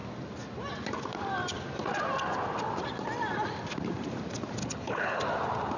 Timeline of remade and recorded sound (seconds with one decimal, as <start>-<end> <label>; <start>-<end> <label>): 0.0-4.6 recorded; 4.6-5.2 remade; 5.2-5.8 recorded

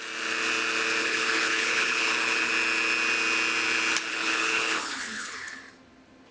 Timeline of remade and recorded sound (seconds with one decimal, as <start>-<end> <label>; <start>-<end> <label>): 0.0-1.0 recorded; 1.0-2.5 remade; 2.5-4.1 recorded; 4.1-5.6 remade; 5.6-6.3 recorded